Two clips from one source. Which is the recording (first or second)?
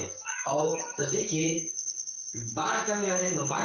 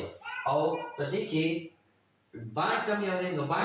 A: second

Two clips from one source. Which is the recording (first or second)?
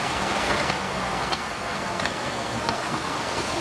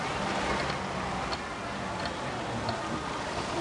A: second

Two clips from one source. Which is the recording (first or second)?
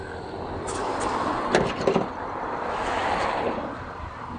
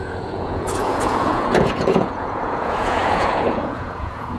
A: first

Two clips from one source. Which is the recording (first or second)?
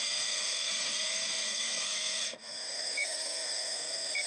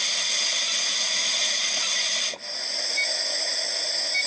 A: second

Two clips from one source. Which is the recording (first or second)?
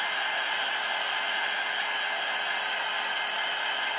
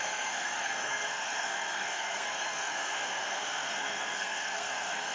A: first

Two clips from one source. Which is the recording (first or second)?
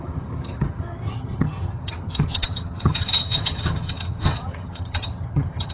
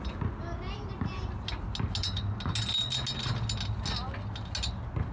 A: second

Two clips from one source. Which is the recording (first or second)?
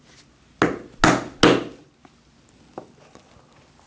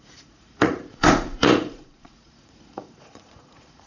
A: first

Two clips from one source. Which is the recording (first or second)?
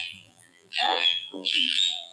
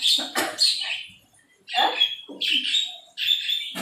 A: second